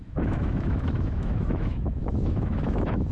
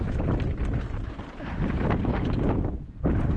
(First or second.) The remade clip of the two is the first